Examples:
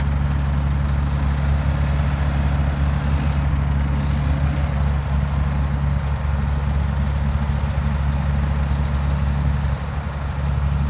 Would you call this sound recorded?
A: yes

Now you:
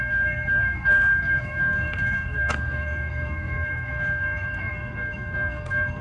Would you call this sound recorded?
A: no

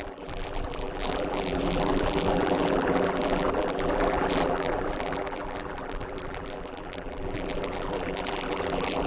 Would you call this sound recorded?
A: no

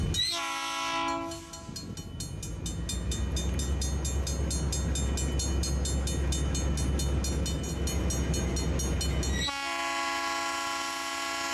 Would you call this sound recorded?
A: yes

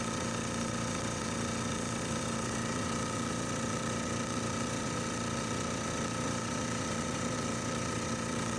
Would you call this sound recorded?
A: no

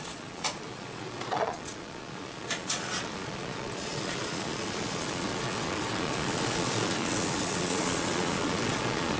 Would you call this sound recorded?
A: no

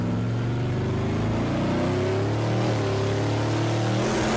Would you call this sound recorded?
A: yes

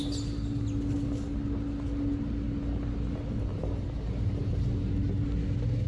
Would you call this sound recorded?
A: yes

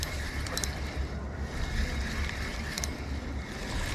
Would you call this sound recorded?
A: yes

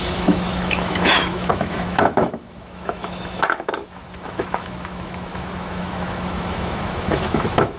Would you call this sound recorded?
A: no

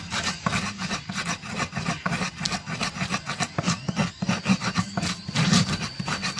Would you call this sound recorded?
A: yes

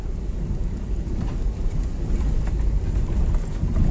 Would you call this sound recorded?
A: yes